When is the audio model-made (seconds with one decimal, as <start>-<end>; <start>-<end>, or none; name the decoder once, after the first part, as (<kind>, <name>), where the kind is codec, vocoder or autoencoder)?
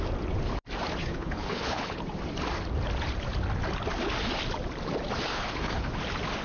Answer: 1.0-2.0 (codec, HILCodec); 5.3-5.9